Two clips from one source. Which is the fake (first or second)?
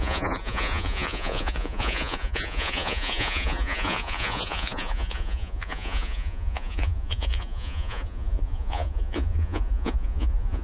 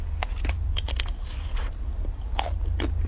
first